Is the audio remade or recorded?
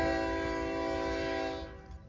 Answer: recorded